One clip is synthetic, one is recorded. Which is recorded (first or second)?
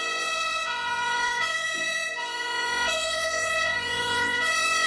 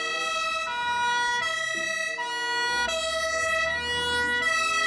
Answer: second